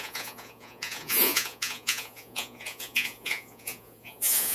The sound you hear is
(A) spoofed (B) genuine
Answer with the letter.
A